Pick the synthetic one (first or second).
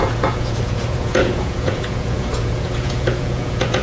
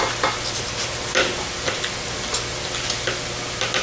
first